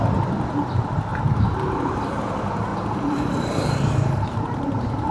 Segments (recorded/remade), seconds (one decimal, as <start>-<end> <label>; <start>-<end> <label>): 0.0-1.1 recorded; 1.1-2.0 remade; 2.0-2.7 recorded; 2.7-5.1 remade